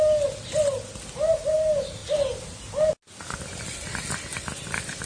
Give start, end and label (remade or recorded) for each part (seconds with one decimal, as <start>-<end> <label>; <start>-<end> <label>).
0.0-5.1 recorded